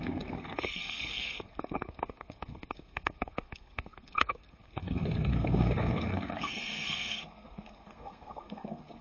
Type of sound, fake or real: fake